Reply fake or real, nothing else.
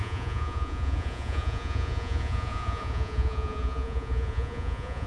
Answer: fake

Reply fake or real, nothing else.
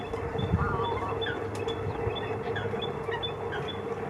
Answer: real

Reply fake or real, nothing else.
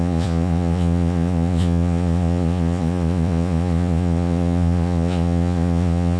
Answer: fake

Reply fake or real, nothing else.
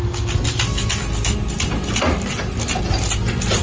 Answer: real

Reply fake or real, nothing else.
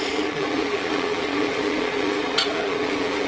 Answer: fake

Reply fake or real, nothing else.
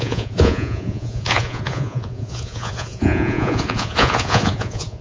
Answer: fake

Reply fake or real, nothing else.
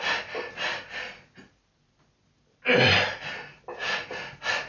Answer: real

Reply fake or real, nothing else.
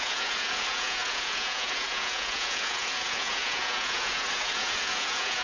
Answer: fake